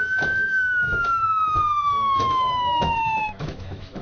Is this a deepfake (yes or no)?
yes